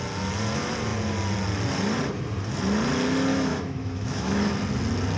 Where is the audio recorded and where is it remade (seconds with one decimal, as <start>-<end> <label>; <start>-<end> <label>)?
0.0-3.3 recorded; 3.3-4.4 remade; 4.4-5.2 recorded